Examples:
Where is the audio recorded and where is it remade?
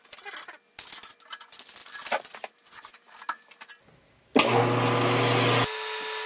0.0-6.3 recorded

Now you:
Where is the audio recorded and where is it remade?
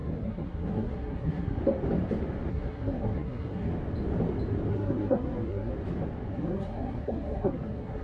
0.0-1.6 remade; 1.6-2.5 recorded; 2.5-3.7 remade; 3.7-4.7 recorded; 4.7-5.7 remade; 5.7-6.3 recorded; 6.3-8.0 remade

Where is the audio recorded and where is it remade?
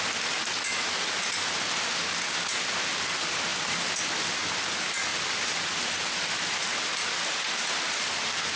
0.0-3.5 recorded; 3.5-4.0 remade; 4.0-5.1 recorded; 5.1-5.9 remade; 5.9-8.6 recorded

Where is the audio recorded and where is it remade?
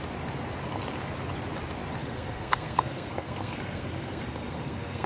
0.0-2.0 recorded; 2.0-5.1 remade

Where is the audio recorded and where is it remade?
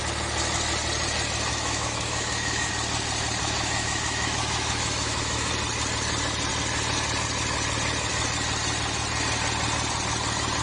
0.0-1.5 recorded; 1.5-2.7 remade; 2.7-3.4 recorded; 3.4-5.5 remade; 5.5-10.6 recorded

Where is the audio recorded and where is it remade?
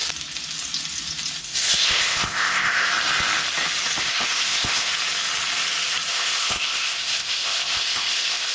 0.0-1.4 recorded; 1.4-2.9 remade; 2.9-4.0 recorded; 4.0-4.9 remade; 4.9-6.1 recorded; 6.1-8.5 remade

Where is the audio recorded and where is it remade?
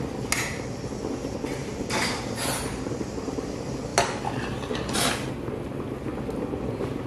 0.0-7.1 recorded